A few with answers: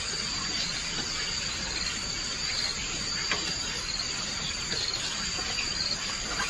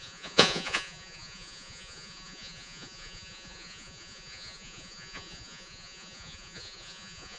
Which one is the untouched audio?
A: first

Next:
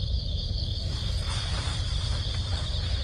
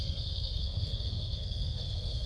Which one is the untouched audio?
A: first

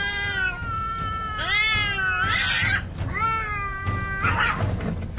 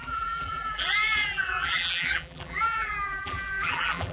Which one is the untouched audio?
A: first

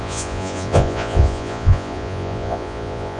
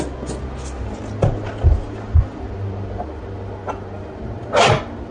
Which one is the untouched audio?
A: second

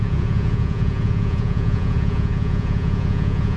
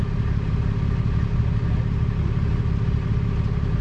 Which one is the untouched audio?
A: second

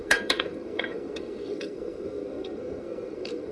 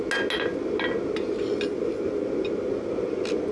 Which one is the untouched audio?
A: second